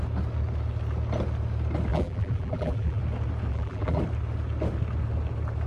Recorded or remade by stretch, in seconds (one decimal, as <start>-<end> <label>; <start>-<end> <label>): 0.0-1.9 recorded; 1.9-3.0 remade; 3.0-3.5 recorded; 3.5-4.0 remade; 4.0-5.7 recorded